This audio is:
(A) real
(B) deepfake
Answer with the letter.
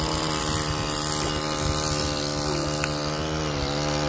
A